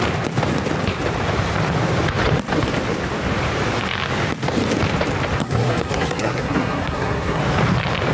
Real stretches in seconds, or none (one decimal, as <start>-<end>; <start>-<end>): 0.0-5.4; 7.4-8.1